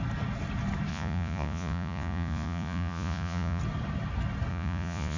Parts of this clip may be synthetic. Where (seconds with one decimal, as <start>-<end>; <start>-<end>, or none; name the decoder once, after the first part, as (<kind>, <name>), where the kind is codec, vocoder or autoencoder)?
0.9-3.6 (vocoder, Vocos); 4.5-5.2